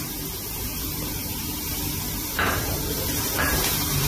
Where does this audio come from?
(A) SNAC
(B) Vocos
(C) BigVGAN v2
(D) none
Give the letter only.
C